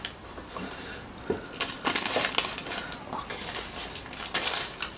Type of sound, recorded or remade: recorded